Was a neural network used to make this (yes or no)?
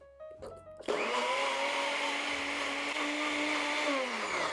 no